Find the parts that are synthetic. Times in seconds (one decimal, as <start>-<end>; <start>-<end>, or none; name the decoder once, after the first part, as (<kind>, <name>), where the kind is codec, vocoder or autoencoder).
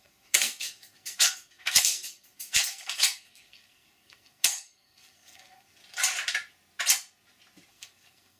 0.0-5.8 (codec, SNAC); 7.7-8.4